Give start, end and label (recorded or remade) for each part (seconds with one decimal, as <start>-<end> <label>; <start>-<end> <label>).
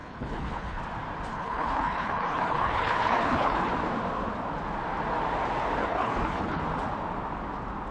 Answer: 0.0-0.8 remade; 0.8-1.3 recorded; 1.3-3.7 remade; 3.7-5.8 recorded; 5.8-6.6 remade; 6.6-7.9 recorded